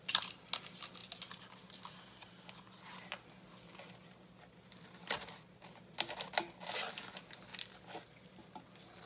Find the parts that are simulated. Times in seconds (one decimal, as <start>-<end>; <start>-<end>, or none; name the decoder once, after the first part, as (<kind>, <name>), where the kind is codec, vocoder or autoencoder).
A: none